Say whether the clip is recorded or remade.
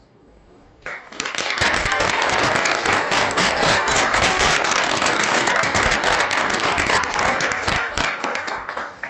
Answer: remade